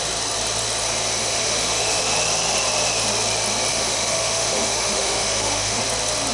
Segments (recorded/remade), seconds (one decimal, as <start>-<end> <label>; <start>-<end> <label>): 0.0-1.2 recorded; 1.2-2.0 remade; 2.0-3.7 recorded; 3.7-5.8 remade; 5.8-6.3 recorded